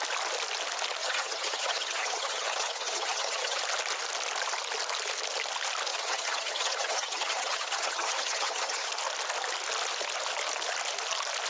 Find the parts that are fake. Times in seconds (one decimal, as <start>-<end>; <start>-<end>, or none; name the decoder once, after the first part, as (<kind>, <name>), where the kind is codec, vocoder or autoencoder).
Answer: 1.0-3.6 (vocoder, HiFi-GAN); 5.9-8.9